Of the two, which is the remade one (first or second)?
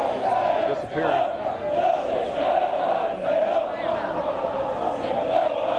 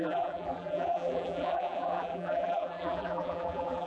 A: second